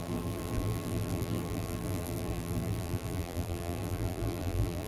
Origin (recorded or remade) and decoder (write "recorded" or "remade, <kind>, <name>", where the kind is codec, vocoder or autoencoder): remade, vocoder, BigVGAN v2